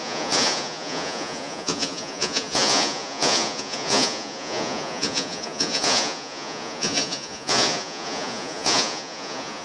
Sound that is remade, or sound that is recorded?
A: remade